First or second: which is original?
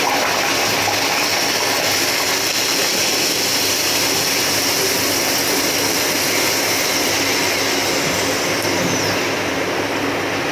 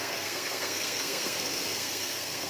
first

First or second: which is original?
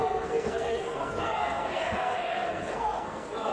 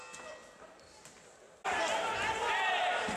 second